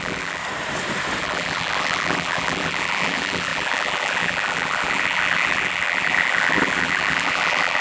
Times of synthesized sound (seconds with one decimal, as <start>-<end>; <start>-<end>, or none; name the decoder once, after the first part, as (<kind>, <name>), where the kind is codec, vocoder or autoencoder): 0.0-0.4 (vocoder, BigVGAN v2); 1.2-7.8